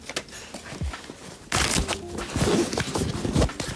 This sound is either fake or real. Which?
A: real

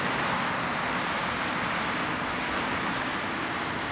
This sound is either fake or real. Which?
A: real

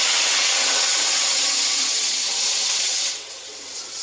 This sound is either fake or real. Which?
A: fake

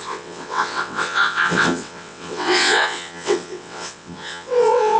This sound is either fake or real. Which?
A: fake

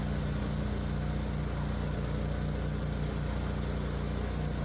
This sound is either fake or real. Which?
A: real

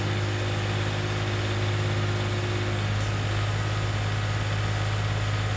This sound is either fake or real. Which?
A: real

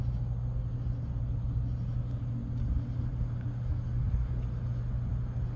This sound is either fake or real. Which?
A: real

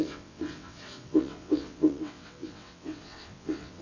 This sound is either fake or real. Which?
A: fake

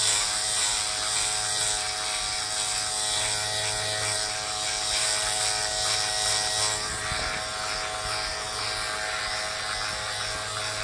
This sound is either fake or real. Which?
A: real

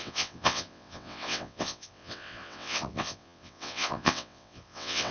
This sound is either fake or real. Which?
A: fake